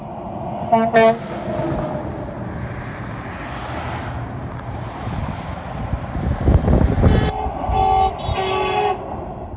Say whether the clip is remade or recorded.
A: recorded